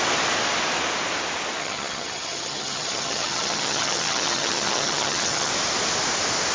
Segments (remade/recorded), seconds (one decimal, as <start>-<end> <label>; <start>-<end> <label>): 0.0-1.6 recorded; 1.6-5.5 remade; 5.5-6.5 recorded